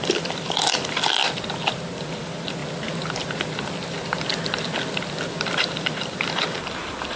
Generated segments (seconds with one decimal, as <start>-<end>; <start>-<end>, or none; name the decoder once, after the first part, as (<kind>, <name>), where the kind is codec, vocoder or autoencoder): 0.0-1.2 (vocoder, BigVGAN v2); 2.0-2.6; 5.6-7.2